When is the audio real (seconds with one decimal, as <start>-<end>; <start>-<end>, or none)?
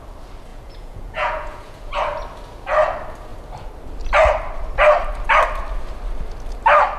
0.0-0.5; 1.9-7.0